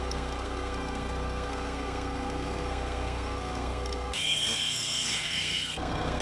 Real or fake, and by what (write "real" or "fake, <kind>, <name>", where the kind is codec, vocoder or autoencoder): fake, codec, SNAC